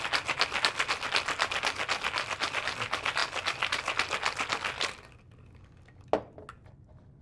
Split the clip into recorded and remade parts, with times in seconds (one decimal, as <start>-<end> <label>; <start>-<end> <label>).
0.0-7.2 recorded

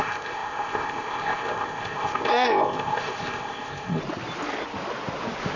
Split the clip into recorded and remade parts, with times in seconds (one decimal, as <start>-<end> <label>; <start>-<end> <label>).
0.0-4.0 remade; 4.0-5.6 recorded

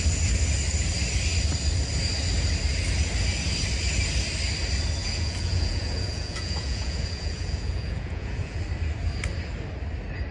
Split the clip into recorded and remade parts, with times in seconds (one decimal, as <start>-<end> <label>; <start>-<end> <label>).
0.0-5.0 recorded; 5.0-8.6 remade; 8.6-10.3 recorded

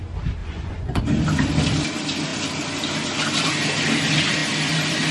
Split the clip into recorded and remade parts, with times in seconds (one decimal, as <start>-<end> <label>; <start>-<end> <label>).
0.0-0.4 recorded; 0.4-1.0 remade; 1.0-5.1 recorded

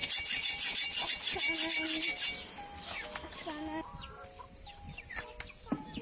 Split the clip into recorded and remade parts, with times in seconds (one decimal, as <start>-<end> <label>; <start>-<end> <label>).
0.0-6.0 recorded